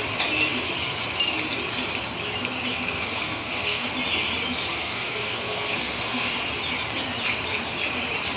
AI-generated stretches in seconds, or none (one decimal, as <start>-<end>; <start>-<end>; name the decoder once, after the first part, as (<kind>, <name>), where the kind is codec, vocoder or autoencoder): 2.7-3.9 (codec, SNAC); 4.7-6.3